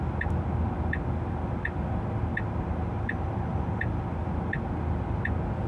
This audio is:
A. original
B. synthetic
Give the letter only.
A